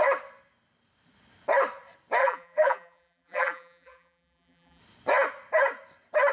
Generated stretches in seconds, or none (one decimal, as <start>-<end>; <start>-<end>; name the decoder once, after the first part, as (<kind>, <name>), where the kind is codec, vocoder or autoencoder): 2.2-4.8 (vocoder, BigVGAN v2)